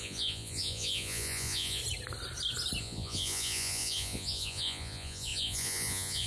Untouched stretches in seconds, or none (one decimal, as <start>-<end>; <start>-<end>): 1.8-2.8